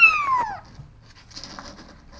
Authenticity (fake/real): real